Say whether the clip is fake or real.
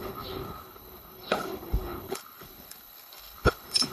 fake